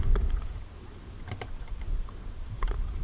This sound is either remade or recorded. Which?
remade